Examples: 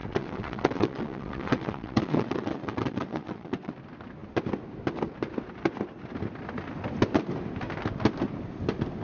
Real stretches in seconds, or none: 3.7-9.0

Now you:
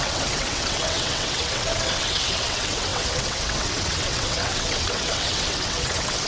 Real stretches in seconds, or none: none

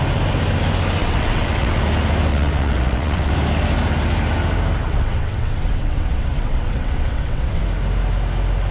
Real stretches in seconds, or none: 0.0-1.0; 1.8-2.3; 3.3-4.8; 7.6-8.7

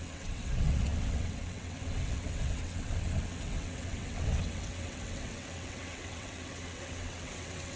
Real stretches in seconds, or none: none

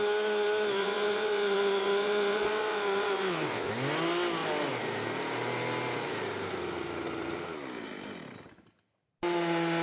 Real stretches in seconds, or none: 0.0-0.8; 3.7-9.8

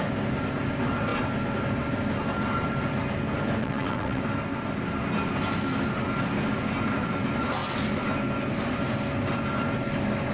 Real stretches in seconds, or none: 0.0-3.6; 4.2-10.3

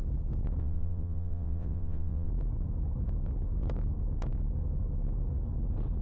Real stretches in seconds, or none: 0.0-0.6; 2.3-6.0